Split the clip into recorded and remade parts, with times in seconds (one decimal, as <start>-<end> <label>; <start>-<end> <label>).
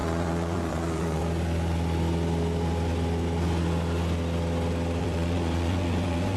0.0-1.2 remade; 1.2-5.0 recorded; 5.0-6.4 remade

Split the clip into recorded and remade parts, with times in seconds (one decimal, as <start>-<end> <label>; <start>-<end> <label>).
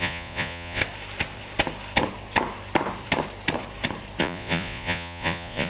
0.0-0.8 remade; 0.8-4.2 recorded; 4.2-5.7 remade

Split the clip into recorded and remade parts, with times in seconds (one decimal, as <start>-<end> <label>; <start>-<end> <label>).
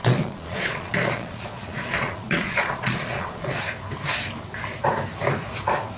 0.0-3.6 remade; 3.6-6.0 recorded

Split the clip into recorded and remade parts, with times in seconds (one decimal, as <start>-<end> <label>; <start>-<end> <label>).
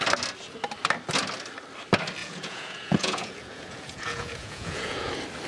0.0-2.2 recorded; 2.2-5.1 remade; 5.1-5.5 recorded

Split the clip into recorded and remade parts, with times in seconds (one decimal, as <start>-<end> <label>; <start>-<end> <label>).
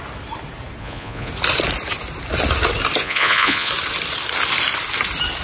0.0-0.8 recorded; 0.8-1.3 remade; 1.3-3.0 recorded; 3.0-3.7 remade; 3.7-5.4 recorded